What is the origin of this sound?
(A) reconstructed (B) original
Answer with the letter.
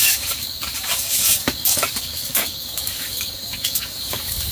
A